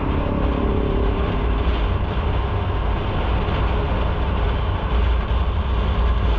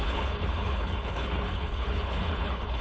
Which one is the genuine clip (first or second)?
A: first